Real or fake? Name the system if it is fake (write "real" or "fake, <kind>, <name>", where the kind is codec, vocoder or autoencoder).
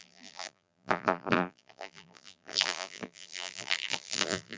fake, vocoder, BigVGAN v2